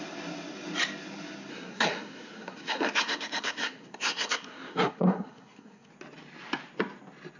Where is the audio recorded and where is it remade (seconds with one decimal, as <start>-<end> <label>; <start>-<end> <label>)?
0.0-1.5 recorded; 1.5-5.9 remade; 5.9-7.4 recorded